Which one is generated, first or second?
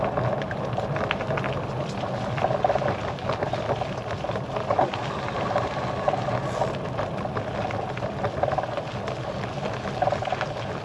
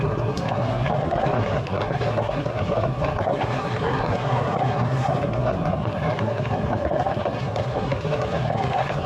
second